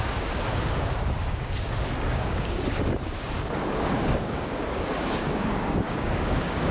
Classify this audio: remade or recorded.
remade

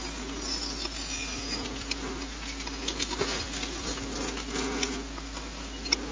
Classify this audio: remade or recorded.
recorded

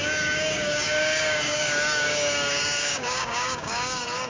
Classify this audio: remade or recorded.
remade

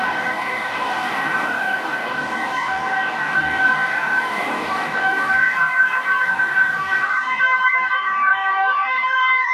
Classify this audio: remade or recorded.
remade